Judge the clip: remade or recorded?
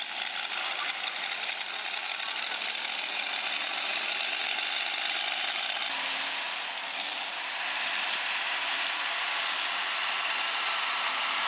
recorded